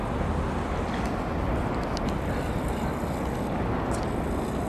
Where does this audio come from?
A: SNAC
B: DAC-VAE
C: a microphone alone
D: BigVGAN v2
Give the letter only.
C